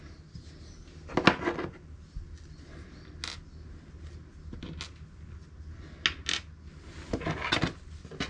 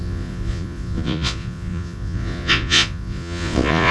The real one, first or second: first